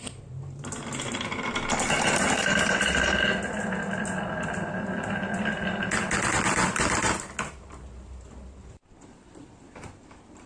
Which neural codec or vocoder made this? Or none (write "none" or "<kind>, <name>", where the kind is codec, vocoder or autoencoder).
none